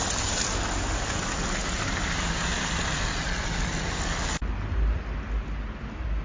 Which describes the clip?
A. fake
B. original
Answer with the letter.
B